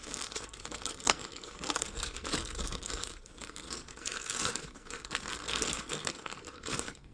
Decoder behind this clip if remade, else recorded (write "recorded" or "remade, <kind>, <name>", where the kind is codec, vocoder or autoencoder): remade, codec, SNAC